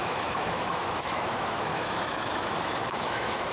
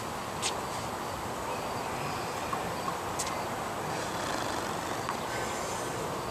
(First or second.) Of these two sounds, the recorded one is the second